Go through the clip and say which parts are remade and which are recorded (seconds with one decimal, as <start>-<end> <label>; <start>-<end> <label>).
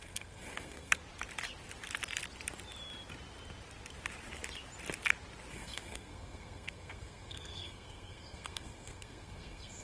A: 0.0-1.0 remade; 1.0-5.5 recorded; 5.5-9.8 remade